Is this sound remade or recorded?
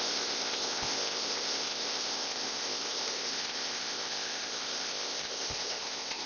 remade